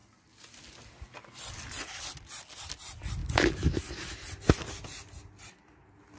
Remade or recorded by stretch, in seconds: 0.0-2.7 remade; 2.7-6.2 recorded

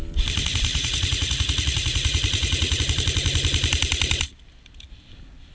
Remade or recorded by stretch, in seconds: 0.0-0.7 recorded; 0.7-2.8 remade; 2.8-5.5 recorded

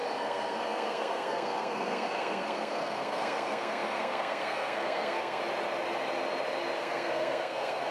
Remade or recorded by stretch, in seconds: 0.0-5.4 remade; 5.4-6.8 recorded; 6.8-7.9 remade

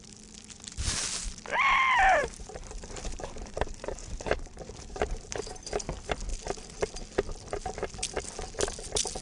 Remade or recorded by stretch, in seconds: 0.0-2.2 recorded; 2.2-5.7 remade; 5.7-9.2 recorded

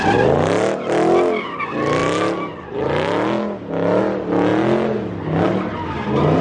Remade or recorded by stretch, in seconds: 0.0-6.4 recorded